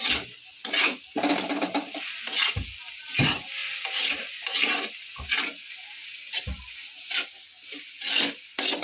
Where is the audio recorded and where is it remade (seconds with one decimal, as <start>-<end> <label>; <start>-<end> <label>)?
0.0-6.0 recorded; 6.0-7.9 remade; 7.9-8.8 recorded